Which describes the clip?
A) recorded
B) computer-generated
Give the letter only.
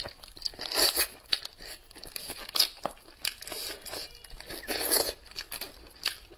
A